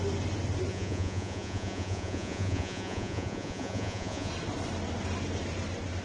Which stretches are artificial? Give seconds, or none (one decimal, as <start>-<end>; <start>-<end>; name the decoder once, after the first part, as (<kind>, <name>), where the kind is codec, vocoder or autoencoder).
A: 0.7-4.3 (vocoder, Vocos)